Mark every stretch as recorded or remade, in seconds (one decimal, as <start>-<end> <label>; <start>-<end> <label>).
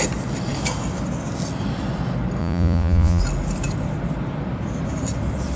0.0-2.4 recorded; 2.4-3.2 remade; 3.2-5.6 recorded